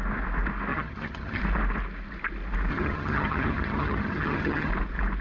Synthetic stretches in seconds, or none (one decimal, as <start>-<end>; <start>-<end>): 0.7-1.4; 2.7-4.7

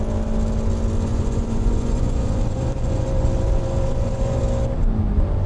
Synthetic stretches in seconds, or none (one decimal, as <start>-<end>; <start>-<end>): 1.1-4.4